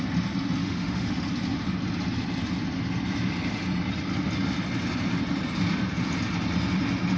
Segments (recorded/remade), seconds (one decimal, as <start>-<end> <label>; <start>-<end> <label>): 0.0-0.6 recorded; 0.6-1.1 remade; 1.1-7.2 recorded